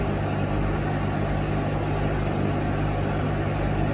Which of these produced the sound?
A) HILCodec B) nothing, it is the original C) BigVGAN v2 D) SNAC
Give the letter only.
B